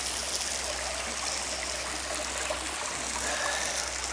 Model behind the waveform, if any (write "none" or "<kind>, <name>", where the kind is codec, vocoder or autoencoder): none